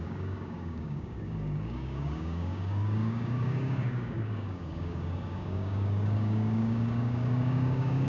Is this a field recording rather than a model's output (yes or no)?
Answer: no